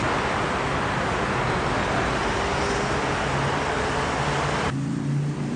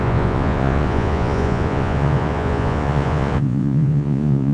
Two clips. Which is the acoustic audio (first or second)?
first